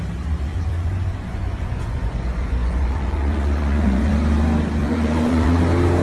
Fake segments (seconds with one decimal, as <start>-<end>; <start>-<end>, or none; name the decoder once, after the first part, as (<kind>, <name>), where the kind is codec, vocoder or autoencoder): 0.5-4.1 (vocoder, Vocos); 4.8-5.6